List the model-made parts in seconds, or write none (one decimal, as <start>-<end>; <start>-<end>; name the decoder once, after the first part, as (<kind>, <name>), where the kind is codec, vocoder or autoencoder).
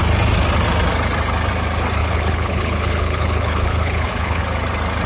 2.0-4.4 (codec, HILCodec)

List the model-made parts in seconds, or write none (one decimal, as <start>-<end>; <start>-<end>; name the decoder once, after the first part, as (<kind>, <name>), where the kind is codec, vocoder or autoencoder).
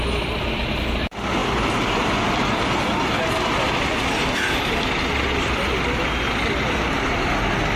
none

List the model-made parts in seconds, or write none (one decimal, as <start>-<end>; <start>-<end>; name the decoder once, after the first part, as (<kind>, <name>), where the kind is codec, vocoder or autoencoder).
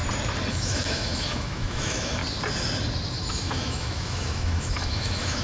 0.5-2.2 (autoencoder, DAC-VAE); 3.3-5.4